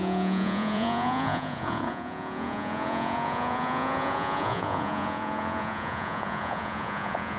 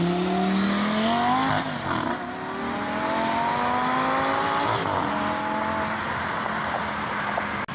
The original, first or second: second